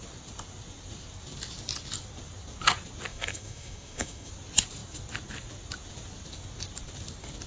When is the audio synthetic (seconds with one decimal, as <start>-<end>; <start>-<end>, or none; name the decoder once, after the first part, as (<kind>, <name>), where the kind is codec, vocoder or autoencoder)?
3.1-4.3 (autoencoder, DAC-VAE)